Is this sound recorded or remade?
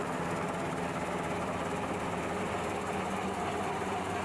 recorded